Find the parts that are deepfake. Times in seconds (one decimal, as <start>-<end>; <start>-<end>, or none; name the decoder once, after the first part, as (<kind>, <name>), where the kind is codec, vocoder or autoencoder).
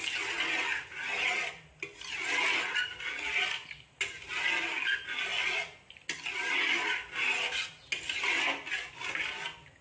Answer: none